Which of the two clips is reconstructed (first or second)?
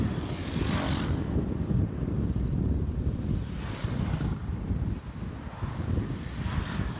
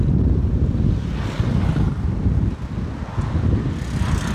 first